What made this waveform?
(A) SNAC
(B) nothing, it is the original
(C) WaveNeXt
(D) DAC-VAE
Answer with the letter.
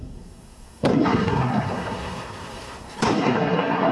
A